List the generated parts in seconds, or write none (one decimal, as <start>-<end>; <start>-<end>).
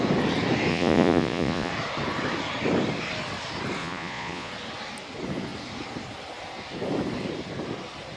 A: 0.7-1.7; 3.8-4.5